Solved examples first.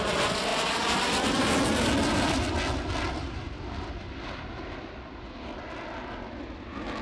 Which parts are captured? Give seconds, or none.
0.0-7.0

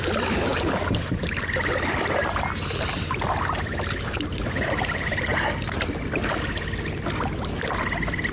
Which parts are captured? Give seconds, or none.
0.0-5.3; 5.8-8.3

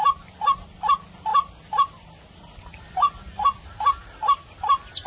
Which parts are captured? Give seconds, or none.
0.0-5.1

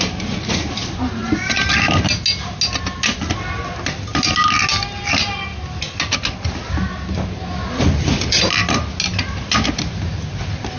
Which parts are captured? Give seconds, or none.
0.0-10.8

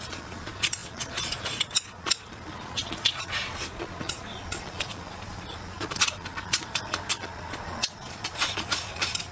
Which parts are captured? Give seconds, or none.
none

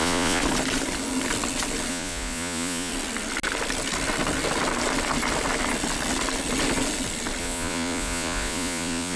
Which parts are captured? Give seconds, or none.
0.4-1.9; 2.9-7.4

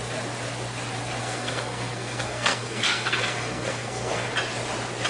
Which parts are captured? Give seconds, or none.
0.0-1.2; 4.3-5.1